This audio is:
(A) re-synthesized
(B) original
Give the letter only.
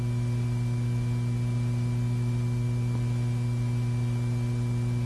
B